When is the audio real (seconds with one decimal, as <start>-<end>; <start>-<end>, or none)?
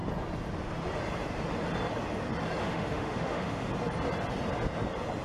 0.0-2.6; 3.7-5.2